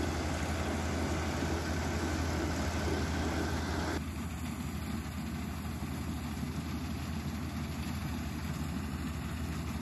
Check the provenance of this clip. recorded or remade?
recorded